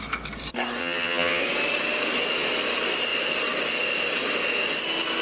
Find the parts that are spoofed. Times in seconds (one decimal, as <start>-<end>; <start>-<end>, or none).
0.8-1.4